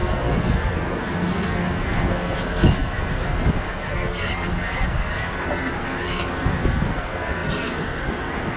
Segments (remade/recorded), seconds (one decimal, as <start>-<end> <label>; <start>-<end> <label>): 0.0-8.6 remade